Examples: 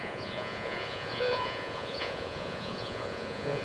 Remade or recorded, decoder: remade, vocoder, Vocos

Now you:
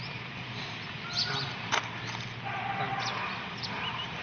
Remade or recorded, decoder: recorded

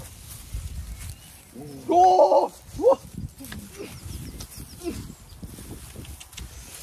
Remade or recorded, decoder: recorded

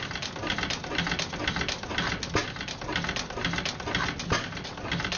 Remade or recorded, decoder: recorded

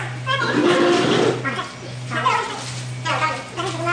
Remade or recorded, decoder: recorded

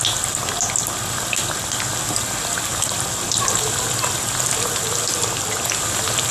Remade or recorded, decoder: recorded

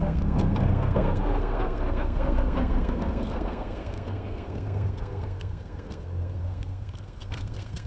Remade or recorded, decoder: remade, codec, SNAC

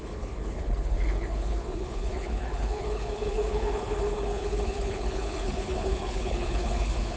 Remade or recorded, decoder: remade, codec, HILCodec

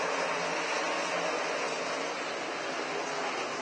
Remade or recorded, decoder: recorded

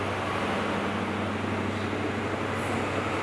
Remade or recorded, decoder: recorded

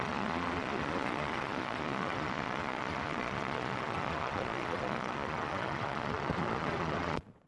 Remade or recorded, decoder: remade, vocoder, Vocos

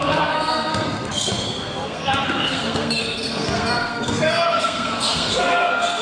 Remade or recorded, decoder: remade, codec, SNAC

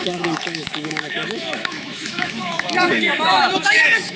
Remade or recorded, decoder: remade, autoencoder, DAC-VAE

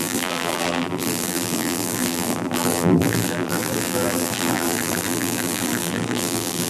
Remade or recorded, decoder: remade, vocoder, BigVGAN v2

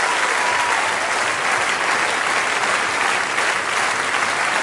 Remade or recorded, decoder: recorded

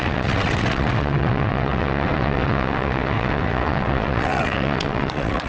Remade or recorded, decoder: remade, vocoder, WaveNeXt